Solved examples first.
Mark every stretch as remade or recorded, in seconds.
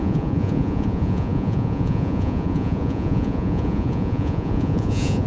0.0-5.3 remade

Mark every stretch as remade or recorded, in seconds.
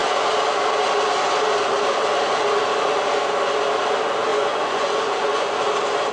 0.0-4.3 recorded; 4.3-5.6 remade; 5.6-6.1 recorded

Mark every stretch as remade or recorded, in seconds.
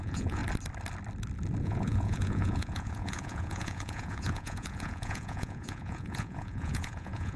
0.0-0.4 remade; 0.4-1.6 recorded; 1.6-7.4 remade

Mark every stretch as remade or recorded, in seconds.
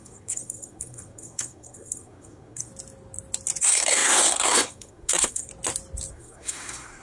0.0-2.7 remade; 2.7-3.6 recorded; 3.6-5.5 remade; 5.5-6.1 recorded; 6.1-7.0 remade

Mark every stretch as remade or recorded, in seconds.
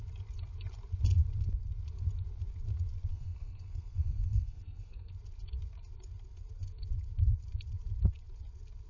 0.0-3.1 recorded; 3.1-5.1 remade; 5.1-8.9 recorded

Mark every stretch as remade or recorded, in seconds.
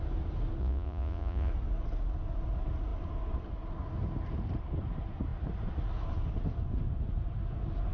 0.0-0.6 recorded; 0.6-1.5 remade; 1.5-7.9 recorded